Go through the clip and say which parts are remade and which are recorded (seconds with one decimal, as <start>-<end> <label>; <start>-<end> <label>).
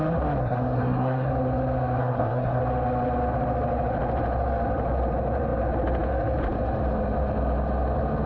0.0-0.4 recorded; 0.4-1.3 remade; 1.3-2.0 recorded; 2.0-2.6 remade; 2.6-8.3 recorded